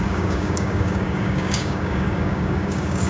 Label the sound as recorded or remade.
remade